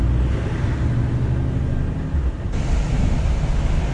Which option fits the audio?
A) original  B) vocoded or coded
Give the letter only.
A